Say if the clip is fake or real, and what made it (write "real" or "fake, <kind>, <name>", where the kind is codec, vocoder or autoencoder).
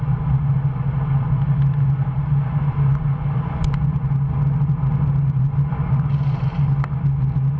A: real